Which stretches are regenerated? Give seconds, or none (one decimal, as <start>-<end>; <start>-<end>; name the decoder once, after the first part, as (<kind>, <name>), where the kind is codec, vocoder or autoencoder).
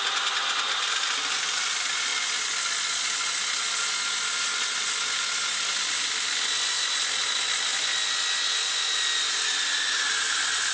none